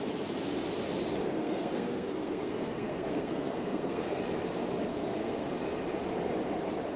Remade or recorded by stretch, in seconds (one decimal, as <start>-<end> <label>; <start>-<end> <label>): 0.0-1.2 recorded; 1.2-4.2 remade; 4.2-4.9 recorded; 4.9-5.5 remade; 5.5-7.0 recorded